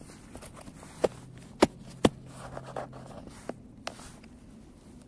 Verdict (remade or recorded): recorded